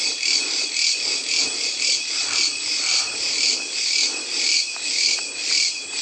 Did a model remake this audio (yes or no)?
no